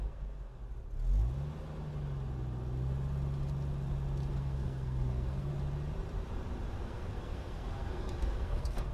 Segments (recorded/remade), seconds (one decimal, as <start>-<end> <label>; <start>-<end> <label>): 0.0-0.6 remade; 0.6-4.3 recorded; 4.3-5.5 remade; 5.5-6.8 recorded; 6.8-8.9 remade